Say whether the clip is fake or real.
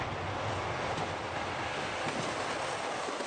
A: real